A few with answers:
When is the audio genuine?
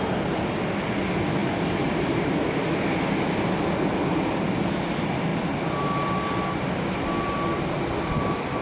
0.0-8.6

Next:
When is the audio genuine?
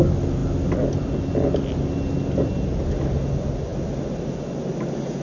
0.0-5.2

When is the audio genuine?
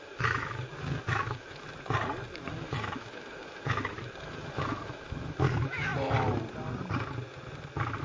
1.7-2.5; 5.9-8.0